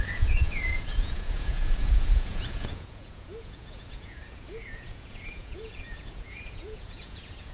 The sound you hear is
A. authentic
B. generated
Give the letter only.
B